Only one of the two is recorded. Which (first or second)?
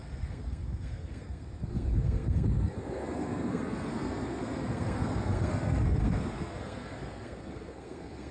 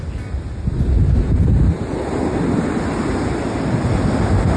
second